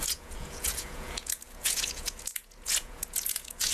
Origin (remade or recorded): remade